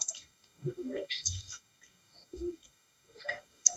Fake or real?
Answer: fake